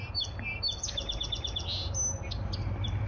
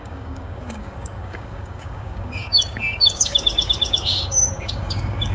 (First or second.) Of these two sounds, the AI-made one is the second